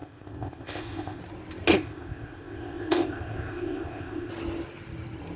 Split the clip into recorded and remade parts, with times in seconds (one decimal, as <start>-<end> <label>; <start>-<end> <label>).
0.0-1.2 remade; 1.2-1.7 recorded; 1.7-4.3 remade; 4.3-5.4 recorded